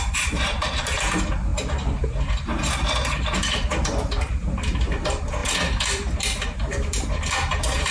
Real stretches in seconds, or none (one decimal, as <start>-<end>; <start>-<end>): none